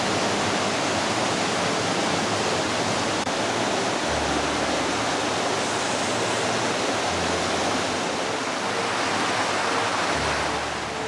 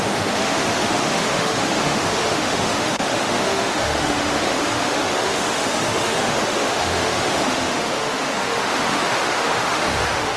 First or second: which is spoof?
second